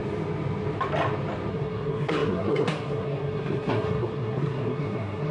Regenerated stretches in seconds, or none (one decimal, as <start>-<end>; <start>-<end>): 1.5-5.3